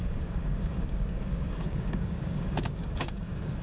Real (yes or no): no